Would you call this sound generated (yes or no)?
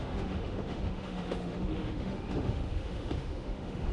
yes